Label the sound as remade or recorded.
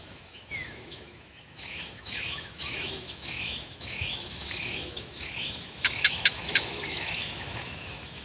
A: remade